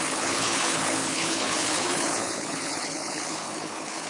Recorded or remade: remade